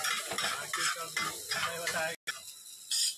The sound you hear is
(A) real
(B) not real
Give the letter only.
A